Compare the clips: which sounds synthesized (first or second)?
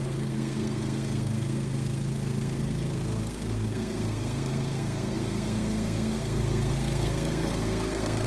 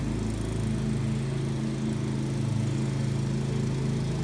first